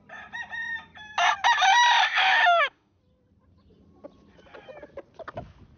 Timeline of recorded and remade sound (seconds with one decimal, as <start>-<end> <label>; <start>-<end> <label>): 0.0-2.2 recorded; 2.2-3.0 remade; 3.0-5.8 recorded